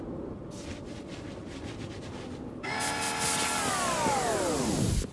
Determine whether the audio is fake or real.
real